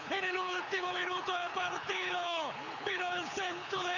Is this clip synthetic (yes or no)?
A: yes